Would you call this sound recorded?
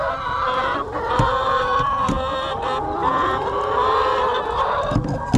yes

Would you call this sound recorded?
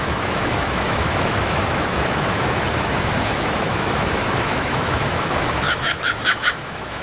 no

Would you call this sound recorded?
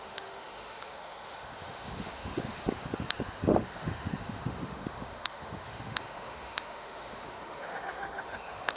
no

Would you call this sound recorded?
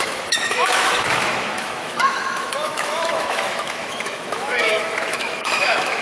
no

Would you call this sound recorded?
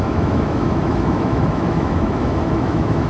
no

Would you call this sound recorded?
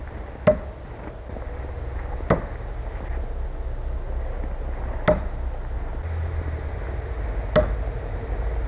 yes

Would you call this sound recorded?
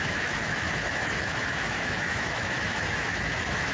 no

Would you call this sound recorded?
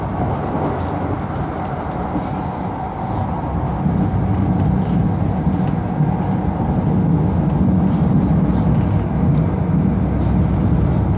yes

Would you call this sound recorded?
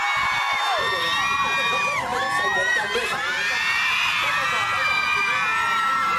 yes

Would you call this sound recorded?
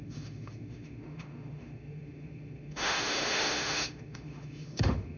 no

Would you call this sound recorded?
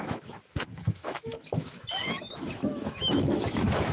no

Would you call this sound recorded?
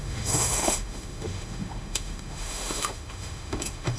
no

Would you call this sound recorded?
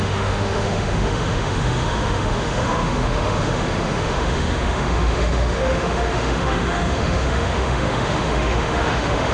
no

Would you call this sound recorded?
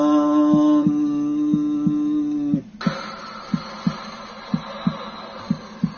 yes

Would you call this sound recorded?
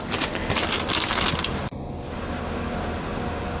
yes